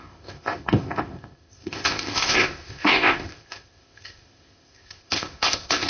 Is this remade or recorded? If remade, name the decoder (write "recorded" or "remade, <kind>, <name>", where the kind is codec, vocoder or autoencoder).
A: remade, codec, ZipCodec